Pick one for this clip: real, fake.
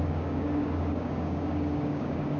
fake